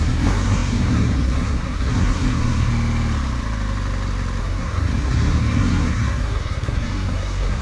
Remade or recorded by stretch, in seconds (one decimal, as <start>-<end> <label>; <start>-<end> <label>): 0.0-2.7 remade; 2.7-4.4 recorded; 4.4-7.6 remade